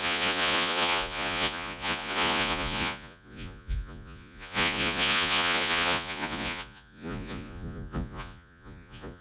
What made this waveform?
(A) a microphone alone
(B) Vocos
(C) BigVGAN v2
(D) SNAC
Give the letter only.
B